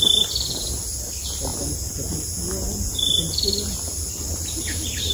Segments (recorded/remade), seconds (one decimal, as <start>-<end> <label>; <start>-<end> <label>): 0.0-5.1 recorded